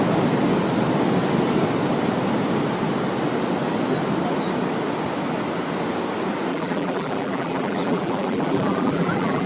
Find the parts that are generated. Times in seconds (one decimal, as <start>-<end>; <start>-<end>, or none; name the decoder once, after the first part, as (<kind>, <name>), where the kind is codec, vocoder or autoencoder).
6.5-9.5 (vocoder, BigVGAN v2)